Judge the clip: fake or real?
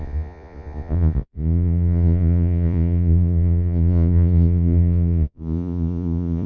fake